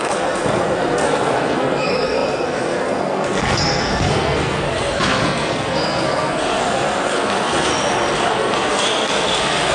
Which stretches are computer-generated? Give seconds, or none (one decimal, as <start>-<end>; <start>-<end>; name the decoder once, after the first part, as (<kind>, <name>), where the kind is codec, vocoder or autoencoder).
0.0-7.7 (codec, SNAC); 8.3-9.7